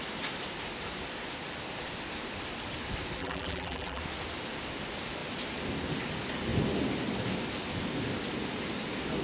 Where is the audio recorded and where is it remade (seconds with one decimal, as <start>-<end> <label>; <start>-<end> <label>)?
0.0-3.2 recorded; 3.2-4.0 remade; 4.0-9.2 recorded